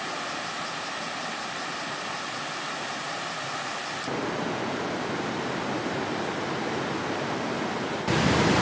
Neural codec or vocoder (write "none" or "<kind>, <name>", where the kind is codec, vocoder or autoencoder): none